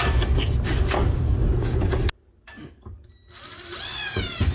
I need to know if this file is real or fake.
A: real